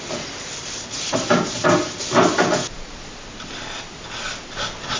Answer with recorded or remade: recorded